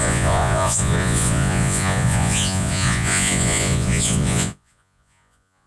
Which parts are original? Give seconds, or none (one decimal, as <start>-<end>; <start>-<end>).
none